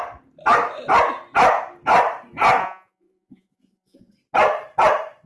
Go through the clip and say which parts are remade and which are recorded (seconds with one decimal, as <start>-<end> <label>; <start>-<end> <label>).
0.0-2.6 recorded; 2.6-4.1 remade; 4.1-5.3 recorded